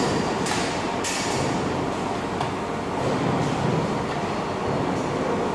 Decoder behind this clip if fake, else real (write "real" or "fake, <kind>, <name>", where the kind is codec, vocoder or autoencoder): real